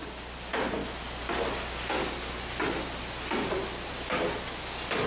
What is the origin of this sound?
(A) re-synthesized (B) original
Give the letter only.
B